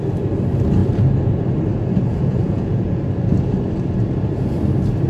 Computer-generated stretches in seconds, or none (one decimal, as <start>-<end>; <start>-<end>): 2.1-3.0